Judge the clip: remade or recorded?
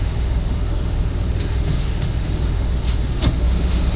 remade